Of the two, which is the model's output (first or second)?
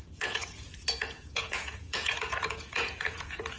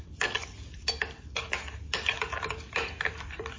first